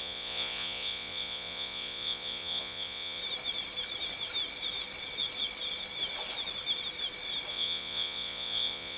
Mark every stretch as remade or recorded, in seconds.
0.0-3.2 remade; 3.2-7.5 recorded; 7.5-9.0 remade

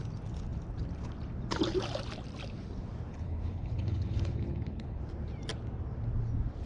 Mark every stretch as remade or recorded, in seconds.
0.0-3.1 recorded; 3.1-5.0 remade; 5.0-6.7 recorded

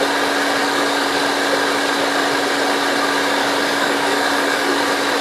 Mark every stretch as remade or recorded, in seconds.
0.0-0.6 recorded; 0.6-1.2 remade; 1.2-3.4 recorded; 3.4-4.8 remade; 4.8-5.2 recorded